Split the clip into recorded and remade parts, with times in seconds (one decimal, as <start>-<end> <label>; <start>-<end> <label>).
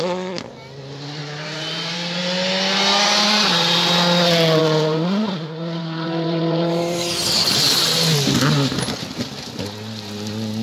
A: 0.0-1.2 recorded; 1.2-2.2 remade; 2.2-4.6 recorded; 4.6-7.1 remade; 7.1-10.6 recorded